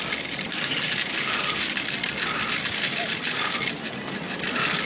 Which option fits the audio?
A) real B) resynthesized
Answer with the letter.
A